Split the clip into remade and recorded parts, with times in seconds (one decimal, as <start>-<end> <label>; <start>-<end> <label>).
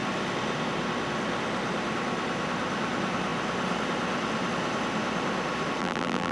0.0-5.8 recorded; 5.8-6.3 remade